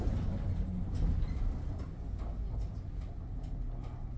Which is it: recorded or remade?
recorded